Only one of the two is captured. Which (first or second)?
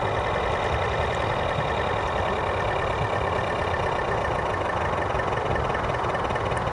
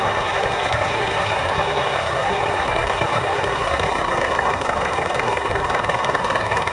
first